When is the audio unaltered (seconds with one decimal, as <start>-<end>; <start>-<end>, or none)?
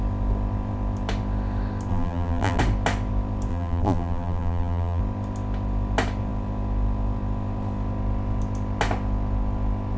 0.0-1.9; 2.6-3.5; 5.0-10.0